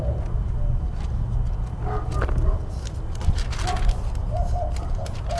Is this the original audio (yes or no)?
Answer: yes